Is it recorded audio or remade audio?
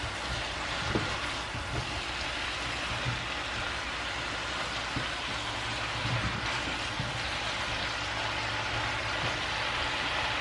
recorded